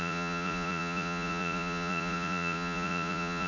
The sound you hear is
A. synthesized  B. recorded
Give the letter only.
A